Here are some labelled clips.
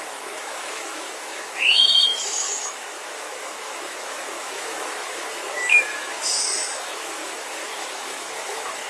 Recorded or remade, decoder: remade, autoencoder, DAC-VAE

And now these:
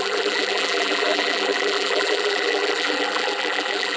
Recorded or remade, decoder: remade, vocoder, BigVGAN v2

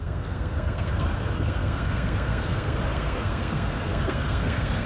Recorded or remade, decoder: remade, codec, SNAC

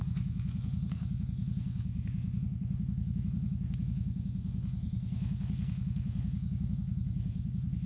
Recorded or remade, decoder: remade, codec, SNAC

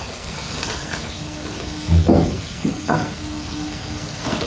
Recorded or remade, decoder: remade, codec, SNAC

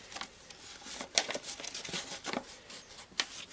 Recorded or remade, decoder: recorded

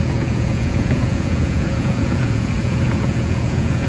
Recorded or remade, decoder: remade, vocoder, Vocos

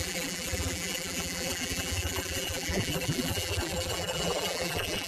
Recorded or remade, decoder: remade, vocoder, BigVGAN v2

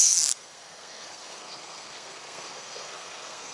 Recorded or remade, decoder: remade, codec, SNAC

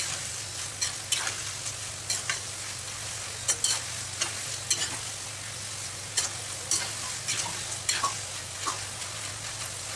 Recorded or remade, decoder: recorded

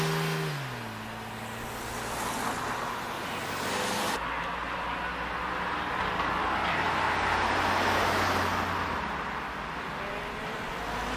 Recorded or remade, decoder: recorded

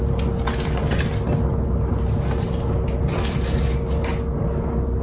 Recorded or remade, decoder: recorded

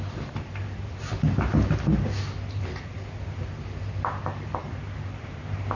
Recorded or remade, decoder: recorded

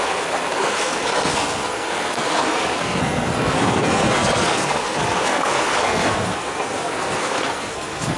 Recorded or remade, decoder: remade, codec, SNAC